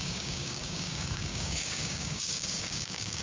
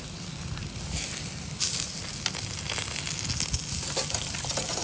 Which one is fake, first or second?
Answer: first